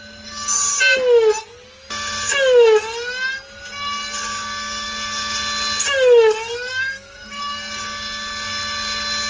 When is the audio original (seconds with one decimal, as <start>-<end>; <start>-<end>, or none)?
0.0-6.7; 7.4-9.3